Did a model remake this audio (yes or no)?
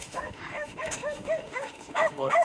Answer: yes